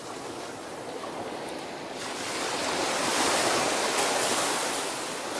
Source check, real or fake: real